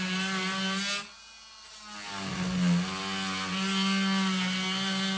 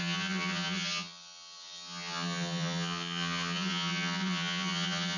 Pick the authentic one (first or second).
first